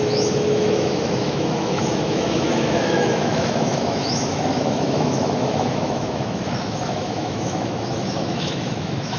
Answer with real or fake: fake